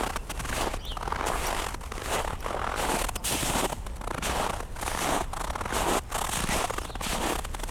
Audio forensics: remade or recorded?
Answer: recorded